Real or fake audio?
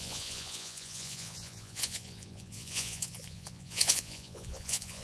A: fake